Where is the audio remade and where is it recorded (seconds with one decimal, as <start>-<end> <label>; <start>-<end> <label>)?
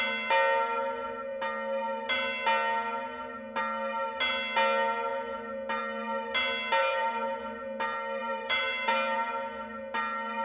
0.0-6.8 recorded; 6.8-7.4 remade; 7.4-8.2 recorded; 8.2-9.3 remade; 9.3-10.4 recorded